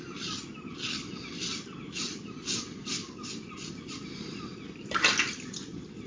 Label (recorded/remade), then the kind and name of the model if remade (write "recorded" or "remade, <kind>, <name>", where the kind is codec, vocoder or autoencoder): recorded